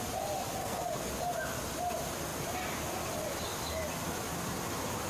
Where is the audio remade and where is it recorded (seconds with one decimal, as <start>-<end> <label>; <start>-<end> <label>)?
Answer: 0.0-0.6 recorded; 0.6-1.1 remade; 1.1-5.1 recorded